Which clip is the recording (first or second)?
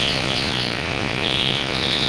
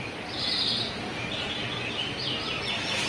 second